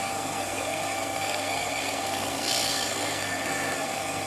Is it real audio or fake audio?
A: fake